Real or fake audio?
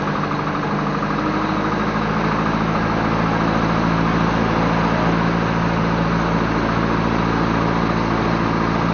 real